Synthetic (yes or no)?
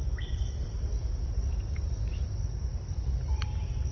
no